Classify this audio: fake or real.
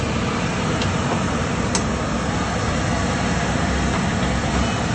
real